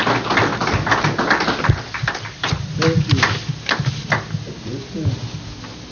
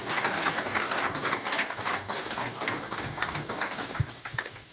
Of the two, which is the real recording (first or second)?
first